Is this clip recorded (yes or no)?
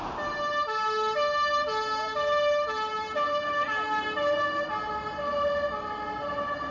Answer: yes